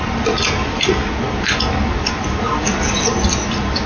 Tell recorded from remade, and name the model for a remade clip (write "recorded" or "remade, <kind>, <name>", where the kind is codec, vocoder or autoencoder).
recorded